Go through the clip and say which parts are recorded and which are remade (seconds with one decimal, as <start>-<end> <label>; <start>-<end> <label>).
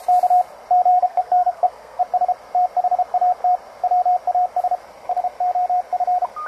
0.0-0.9 recorded; 0.9-2.0 remade; 2.0-6.5 recorded